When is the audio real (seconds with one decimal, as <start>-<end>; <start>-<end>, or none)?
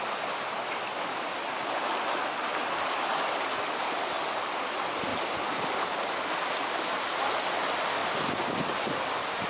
0.0-9.5